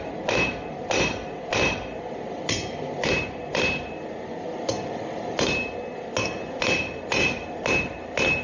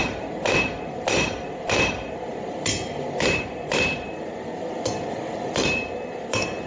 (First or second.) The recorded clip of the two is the first